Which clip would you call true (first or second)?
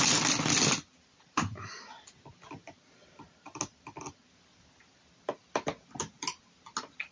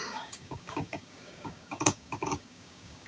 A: first